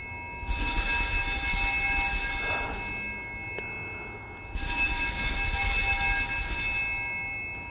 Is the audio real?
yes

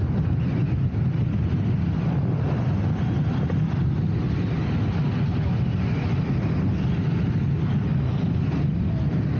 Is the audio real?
yes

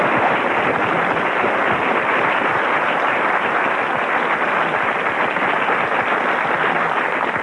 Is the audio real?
yes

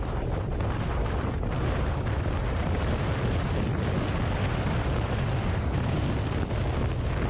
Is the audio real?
yes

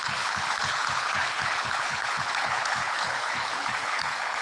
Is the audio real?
no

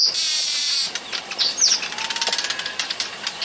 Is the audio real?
yes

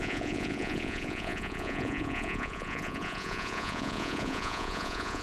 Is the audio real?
no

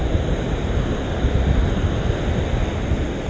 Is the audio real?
yes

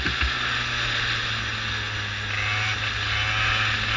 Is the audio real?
yes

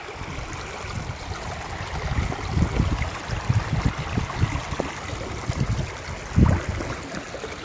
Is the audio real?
yes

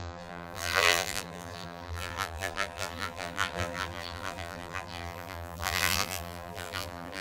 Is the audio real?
no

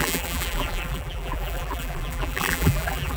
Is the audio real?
no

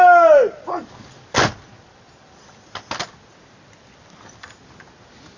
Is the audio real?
yes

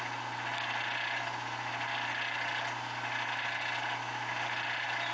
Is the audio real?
yes